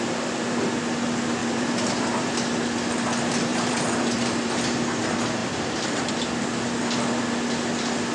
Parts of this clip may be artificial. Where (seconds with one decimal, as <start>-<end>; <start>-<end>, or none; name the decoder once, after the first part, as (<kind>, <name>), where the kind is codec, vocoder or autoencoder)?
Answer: 1.4-2.3 (vocoder, BigVGAN v2); 3.5-5.0; 5.4-6.1